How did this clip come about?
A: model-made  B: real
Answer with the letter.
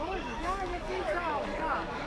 A